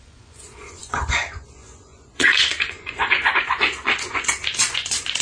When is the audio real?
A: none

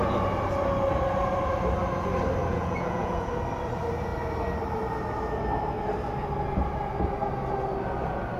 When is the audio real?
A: 0.0-2.5; 3.3-8.4